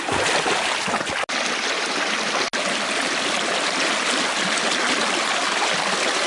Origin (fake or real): real